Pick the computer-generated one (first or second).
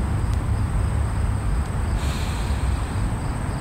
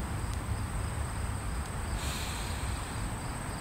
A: second